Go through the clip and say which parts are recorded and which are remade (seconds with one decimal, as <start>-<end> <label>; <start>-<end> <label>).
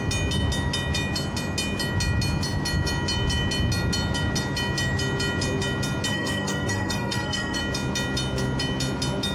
0.0-6.1 recorded; 6.1-7.6 remade; 7.6-9.3 recorded